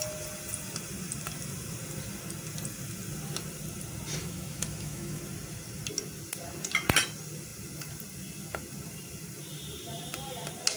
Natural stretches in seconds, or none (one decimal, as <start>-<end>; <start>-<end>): 0.0-4.2; 5.2-10.8